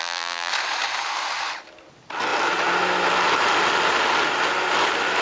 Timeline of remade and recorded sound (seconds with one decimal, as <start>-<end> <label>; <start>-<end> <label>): 0.0-0.5 remade; 0.5-5.2 recorded